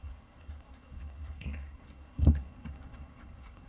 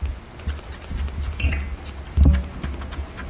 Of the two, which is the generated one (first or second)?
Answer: first